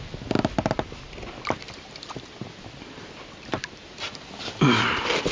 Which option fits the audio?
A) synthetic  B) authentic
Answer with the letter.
B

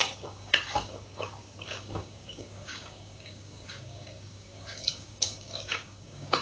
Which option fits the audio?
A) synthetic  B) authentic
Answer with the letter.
A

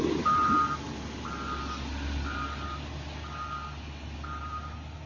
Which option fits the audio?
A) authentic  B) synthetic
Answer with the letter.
A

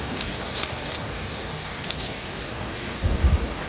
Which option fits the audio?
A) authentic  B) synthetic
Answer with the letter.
B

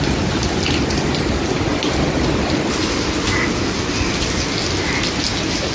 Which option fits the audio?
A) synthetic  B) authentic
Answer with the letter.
B